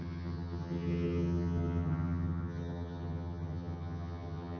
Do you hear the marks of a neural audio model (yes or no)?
yes